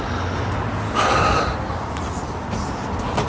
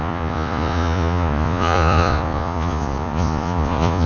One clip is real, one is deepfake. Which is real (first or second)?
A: first